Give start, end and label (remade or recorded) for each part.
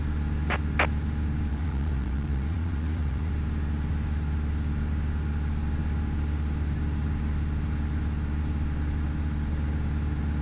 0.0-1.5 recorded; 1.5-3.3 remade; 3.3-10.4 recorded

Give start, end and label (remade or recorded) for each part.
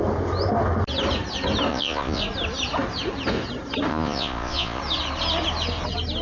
0.0-1.7 recorded; 1.7-2.2 remade; 2.2-3.9 recorded; 3.9-4.8 remade; 4.8-6.2 recorded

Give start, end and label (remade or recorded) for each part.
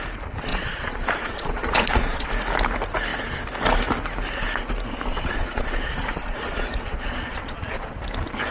0.0-0.5 recorded; 0.5-2.3 remade; 2.3-5.1 recorded; 5.1-7.9 remade; 7.9-8.5 recorded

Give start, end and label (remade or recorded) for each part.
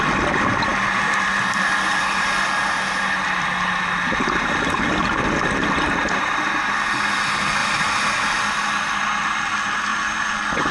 0.0-9.9 recorded; 9.9-10.7 remade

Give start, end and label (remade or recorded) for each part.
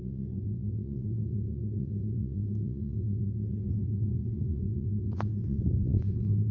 0.0-6.5 remade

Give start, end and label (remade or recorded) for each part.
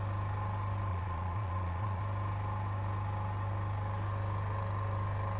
0.0-0.9 recorded; 0.9-2.0 remade; 2.0-5.4 recorded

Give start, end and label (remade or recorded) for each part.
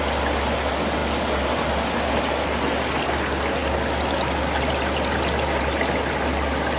0.0-6.8 recorded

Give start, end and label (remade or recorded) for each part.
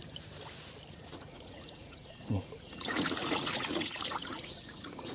0.0-0.9 recorded; 0.9-5.1 remade